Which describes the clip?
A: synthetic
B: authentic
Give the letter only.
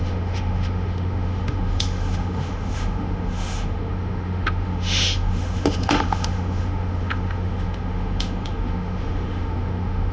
A